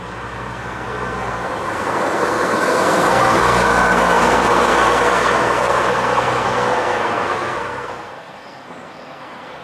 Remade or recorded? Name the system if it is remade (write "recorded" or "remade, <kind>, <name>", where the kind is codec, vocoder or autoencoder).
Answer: remade, codec, SNAC